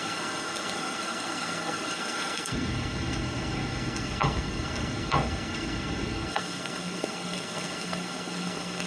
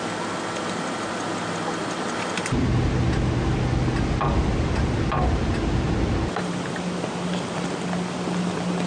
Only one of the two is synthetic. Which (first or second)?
first